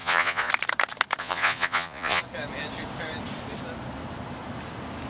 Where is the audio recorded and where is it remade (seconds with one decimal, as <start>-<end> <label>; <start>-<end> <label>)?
0.0-0.5 remade; 0.5-1.2 recorded; 1.2-2.2 remade; 2.2-5.1 recorded